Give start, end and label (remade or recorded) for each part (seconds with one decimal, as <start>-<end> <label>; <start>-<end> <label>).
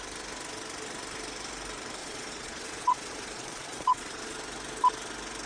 0.0-2.0 recorded; 2.0-4.4 remade; 4.4-5.5 recorded